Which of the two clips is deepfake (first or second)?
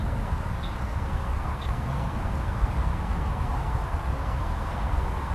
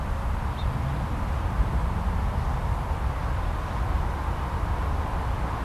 first